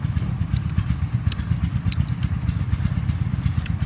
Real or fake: real